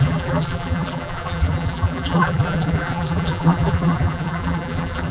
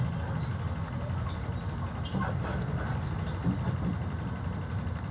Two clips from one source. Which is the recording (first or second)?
second